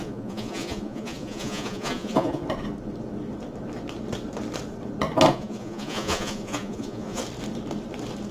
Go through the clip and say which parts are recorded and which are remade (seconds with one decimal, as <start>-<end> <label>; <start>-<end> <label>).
0.0-2.4 remade; 2.4-5.3 recorded; 5.3-7.2 remade; 7.2-8.3 recorded